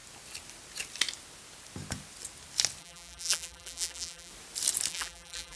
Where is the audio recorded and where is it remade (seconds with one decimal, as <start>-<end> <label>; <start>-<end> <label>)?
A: 0.0-2.8 recorded; 2.8-4.3 remade; 4.3-4.9 recorded; 4.9-5.6 remade